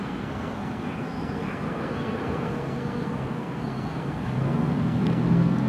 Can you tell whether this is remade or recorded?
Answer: remade